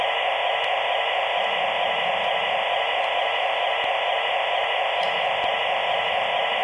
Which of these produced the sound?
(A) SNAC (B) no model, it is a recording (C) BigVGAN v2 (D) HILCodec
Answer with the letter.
B